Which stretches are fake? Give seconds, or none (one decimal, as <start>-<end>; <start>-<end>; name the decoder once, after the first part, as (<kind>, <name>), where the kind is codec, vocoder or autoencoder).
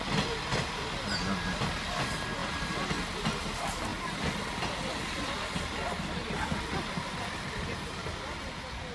none